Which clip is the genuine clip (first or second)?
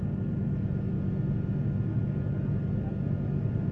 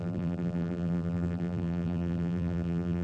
first